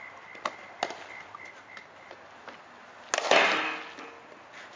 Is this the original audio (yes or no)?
yes